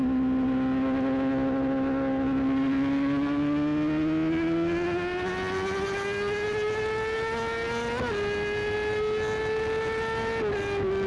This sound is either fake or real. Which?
real